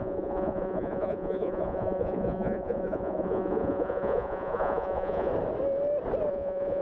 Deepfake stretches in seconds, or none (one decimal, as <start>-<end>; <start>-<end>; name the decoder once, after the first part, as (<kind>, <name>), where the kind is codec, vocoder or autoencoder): 0.0-5.3 (vocoder, Vocos); 6.3-6.8